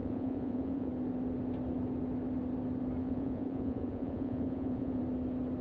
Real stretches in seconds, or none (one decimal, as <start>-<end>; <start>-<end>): 0.9-3.0; 5.0-5.6